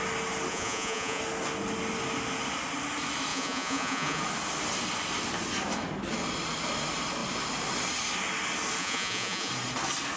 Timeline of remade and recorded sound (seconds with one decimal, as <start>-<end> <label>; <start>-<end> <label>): 0.0-0.5 recorded; 0.5-1.2 remade; 1.2-3.3 recorded; 3.3-4.2 remade; 4.2-8.8 recorded; 8.8-9.5 remade; 9.5-10.2 recorded